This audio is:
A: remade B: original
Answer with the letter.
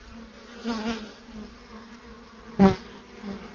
B